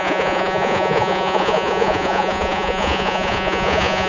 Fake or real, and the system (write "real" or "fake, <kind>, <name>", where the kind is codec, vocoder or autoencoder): fake, vocoder, Vocos